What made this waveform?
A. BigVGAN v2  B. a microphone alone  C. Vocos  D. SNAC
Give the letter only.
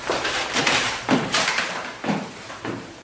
A